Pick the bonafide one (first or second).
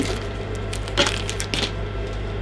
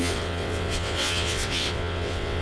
first